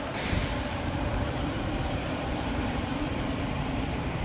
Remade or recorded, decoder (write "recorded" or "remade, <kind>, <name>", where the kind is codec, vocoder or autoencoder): remade, vocoder, BigVGAN v2